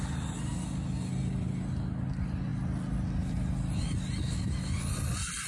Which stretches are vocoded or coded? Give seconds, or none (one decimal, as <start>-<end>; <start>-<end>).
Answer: none